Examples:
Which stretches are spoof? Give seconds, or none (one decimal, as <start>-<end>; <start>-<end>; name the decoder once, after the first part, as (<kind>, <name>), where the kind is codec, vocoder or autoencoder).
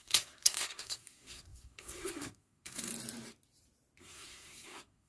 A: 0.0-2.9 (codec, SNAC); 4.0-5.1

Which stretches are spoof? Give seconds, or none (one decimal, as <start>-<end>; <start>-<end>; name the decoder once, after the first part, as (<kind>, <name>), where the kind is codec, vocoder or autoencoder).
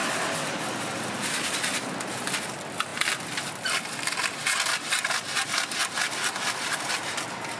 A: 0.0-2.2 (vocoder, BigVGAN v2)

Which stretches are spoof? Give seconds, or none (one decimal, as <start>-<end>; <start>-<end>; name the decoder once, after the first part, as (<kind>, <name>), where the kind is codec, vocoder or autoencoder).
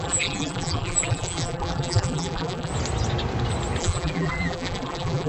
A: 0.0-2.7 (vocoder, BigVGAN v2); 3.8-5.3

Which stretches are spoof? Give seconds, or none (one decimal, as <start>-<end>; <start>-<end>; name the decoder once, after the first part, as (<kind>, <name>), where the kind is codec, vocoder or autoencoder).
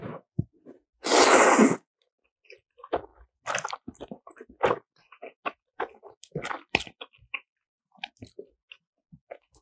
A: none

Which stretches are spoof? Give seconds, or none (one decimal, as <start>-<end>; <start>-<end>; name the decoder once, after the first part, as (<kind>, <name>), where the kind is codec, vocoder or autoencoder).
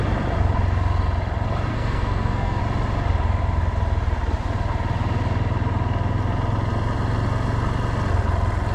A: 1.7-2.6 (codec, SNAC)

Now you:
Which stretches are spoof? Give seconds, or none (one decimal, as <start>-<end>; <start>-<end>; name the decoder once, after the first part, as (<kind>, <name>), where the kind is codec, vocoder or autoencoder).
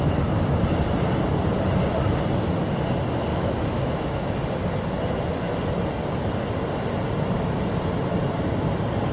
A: 3.3-4.3 (autoencoder, DAC-VAE)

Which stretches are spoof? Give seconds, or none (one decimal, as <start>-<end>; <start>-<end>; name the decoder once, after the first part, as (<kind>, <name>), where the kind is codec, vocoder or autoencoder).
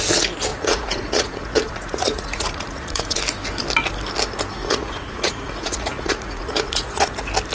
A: 0.5-3.2 (vocoder, Vocos); 4.6-7.1